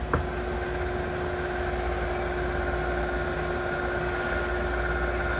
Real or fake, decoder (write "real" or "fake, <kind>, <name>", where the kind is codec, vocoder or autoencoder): real